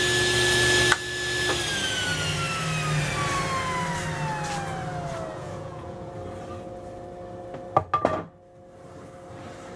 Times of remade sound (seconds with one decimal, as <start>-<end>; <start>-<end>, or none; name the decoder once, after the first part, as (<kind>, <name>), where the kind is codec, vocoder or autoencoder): 5.3-6.1 (vocoder, Vocos)